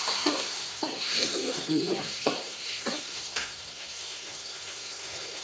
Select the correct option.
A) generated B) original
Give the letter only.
A